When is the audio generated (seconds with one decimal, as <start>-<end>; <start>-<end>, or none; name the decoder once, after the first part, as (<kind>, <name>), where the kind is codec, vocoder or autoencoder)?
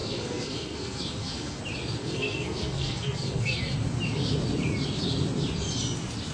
0.0-1.6 (codec, SNAC); 2.0-3.6